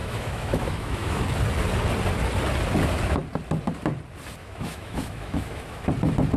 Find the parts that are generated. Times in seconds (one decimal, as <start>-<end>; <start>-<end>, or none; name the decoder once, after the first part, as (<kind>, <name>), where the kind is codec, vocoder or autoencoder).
0.0-1.2 (autoencoder, DAC-VAE); 4.4-5.9